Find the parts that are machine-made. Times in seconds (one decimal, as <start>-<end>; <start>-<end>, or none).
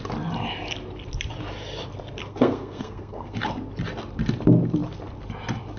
2.2-3.4